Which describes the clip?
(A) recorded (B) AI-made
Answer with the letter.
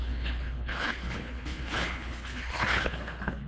B